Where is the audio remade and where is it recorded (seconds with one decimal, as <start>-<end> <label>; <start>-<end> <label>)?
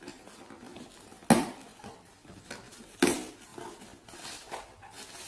0.0-5.3 recorded